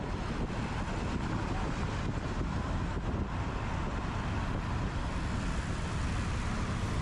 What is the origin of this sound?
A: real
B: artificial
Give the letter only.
A